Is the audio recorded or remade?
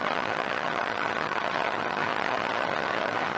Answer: remade